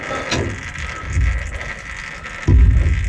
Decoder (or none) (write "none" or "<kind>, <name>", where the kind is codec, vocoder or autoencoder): none